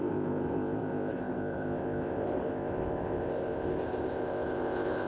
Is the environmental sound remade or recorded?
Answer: remade